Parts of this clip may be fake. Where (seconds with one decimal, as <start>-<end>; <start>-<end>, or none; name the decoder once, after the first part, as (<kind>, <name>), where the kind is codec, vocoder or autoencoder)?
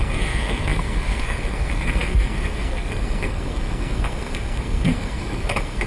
0.0-5.9 (codec, SNAC)